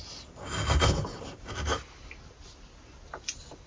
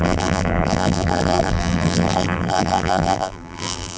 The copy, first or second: second